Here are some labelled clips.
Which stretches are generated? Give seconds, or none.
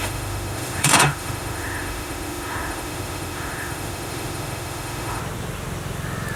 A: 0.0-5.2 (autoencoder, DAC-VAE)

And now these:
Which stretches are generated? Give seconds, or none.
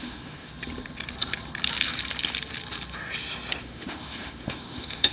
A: 0.0-0.5 (autoencoder, DAC-VAE); 3.6-5.1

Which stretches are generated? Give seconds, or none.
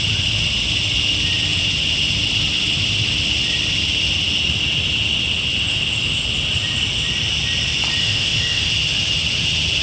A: 8.0-8.7 (autoencoder, DAC-VAE)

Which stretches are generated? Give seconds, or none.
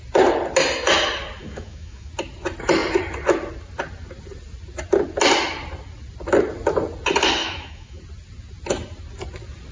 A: 1.4-2.1 (autoencoder, DAC-VAE); 7.4-8.0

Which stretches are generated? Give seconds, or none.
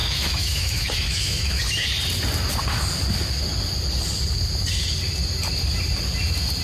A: 0.0-1.6 (autoencoder, DAC-VAE)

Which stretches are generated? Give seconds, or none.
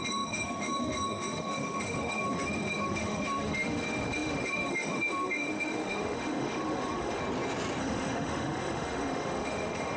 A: 0.0-7.2 (autoencoder, DAC-VAE); 7.8-10.0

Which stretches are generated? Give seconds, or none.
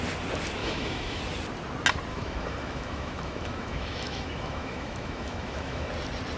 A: 0.6-1.2 (autoencoder, DAC-VAE); 2.1-5.9